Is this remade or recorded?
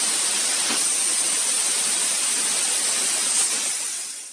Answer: recorded